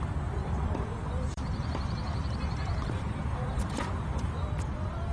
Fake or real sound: fake